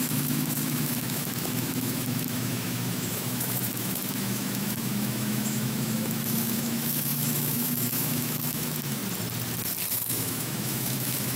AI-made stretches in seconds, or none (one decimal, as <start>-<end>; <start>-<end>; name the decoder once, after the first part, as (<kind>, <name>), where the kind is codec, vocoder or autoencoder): 0.0-9.0 (autoencoder, DAC-VAE); 9.9-11.4

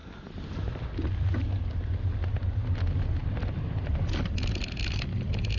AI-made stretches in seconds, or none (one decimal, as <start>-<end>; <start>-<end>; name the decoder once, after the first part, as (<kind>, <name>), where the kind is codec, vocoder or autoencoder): none

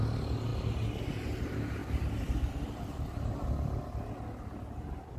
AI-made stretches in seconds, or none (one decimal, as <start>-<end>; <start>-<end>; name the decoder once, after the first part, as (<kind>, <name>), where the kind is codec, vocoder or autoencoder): none

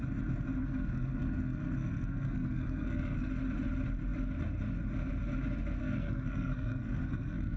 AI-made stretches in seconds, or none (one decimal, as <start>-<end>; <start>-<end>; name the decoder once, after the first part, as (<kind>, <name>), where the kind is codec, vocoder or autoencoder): 0.6-3.3 (codec, SNAC); 5.8-7.6

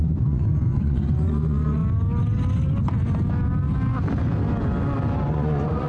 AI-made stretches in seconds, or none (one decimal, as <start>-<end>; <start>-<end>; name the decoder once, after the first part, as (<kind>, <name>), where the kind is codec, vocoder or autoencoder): 0.0-1.8 (vocoder, Vocos); 5.3-5.9

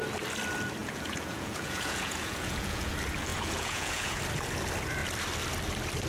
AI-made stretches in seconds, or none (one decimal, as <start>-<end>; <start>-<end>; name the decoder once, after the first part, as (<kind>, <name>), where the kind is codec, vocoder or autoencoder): 0.8-2.9 (vocoder, Vocos); 3.3-4.2

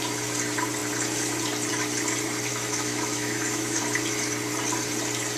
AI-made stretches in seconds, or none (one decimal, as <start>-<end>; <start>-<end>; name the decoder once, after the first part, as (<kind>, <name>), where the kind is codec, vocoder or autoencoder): 2.5-3.8 (autoencoder, DAC-VAE)